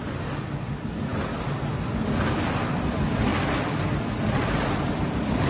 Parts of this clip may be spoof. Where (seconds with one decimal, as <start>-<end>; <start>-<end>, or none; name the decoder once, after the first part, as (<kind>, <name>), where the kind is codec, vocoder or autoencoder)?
3.3-4.9 (vocoder, BigVGAN v2)